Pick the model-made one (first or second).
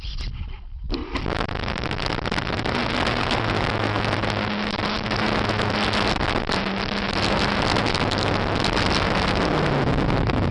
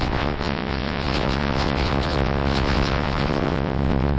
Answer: second